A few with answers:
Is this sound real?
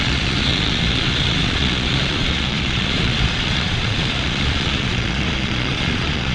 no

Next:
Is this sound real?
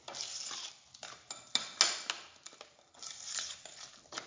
yes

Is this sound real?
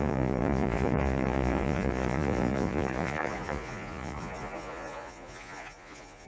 no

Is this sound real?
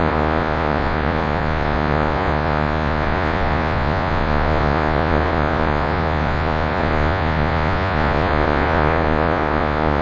no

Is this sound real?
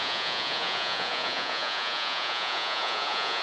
no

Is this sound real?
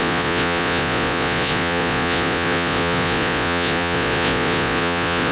no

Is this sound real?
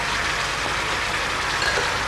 yes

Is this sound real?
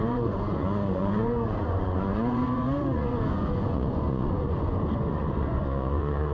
no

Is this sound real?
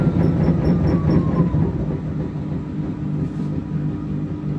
yes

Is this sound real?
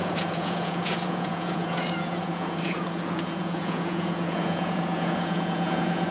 no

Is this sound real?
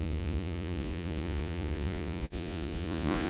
no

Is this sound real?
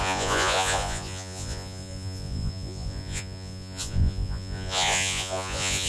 no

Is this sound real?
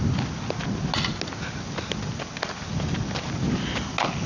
yes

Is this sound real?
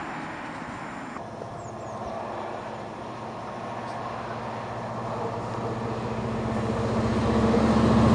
yes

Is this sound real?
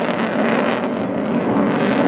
yes